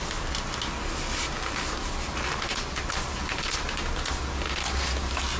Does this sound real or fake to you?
real